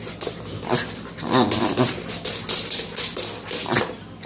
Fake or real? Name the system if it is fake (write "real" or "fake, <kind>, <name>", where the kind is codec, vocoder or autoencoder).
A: fake, vocoder, BigVGAN v2